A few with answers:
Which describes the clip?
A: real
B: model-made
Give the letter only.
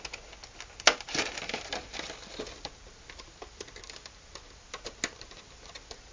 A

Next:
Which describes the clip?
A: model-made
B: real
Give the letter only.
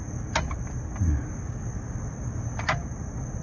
B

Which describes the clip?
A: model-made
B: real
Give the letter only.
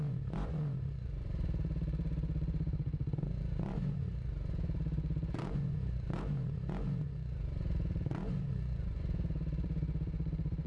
A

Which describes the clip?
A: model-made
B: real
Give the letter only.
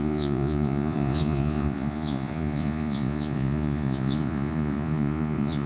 A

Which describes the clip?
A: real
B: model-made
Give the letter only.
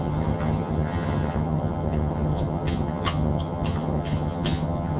B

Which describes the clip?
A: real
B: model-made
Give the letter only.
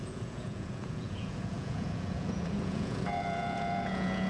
B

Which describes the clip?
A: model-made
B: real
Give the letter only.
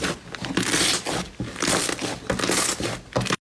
B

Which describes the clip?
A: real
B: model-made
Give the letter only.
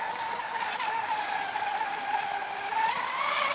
A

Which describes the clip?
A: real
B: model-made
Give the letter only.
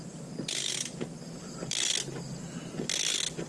A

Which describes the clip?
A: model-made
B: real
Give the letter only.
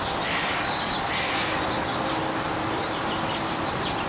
B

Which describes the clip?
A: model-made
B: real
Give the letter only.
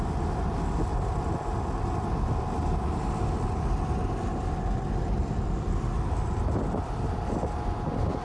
B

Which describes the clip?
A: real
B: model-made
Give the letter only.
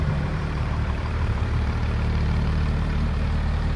B